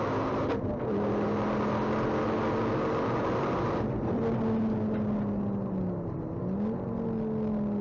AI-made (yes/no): no